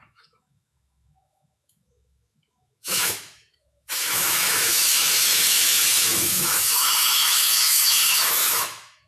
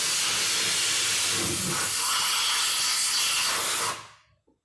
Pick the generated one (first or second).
first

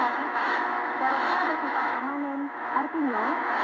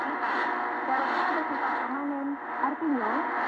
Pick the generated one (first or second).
first